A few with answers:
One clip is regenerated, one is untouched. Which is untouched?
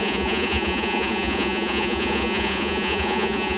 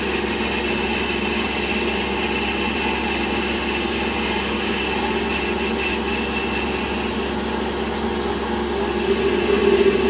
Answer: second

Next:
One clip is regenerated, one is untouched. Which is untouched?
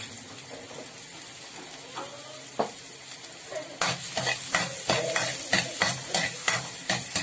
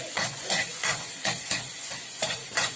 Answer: first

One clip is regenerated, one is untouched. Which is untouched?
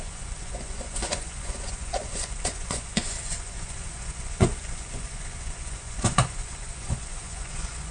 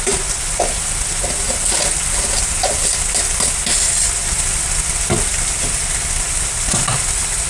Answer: second